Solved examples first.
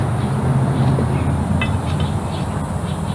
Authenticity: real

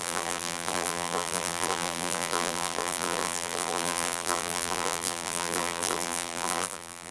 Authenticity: fake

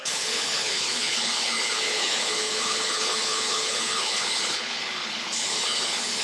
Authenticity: fake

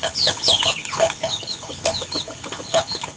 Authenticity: fake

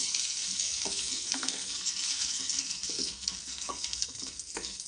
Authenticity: fake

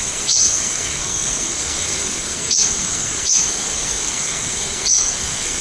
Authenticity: fake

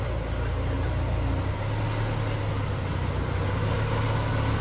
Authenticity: real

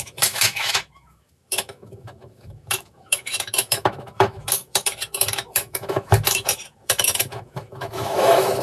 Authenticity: fake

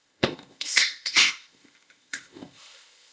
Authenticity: fake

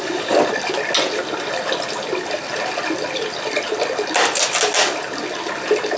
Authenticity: real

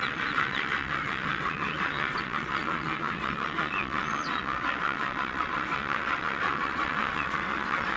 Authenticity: fake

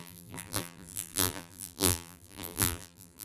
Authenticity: fake